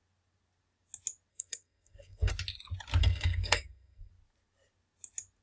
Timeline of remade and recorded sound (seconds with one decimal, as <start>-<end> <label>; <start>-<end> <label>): 0.0-1.3 recorded; 1.3-2.3 remade; 2.3-3.0 recorded; 3.0-4.1 remade; 4.1-5.4 recorded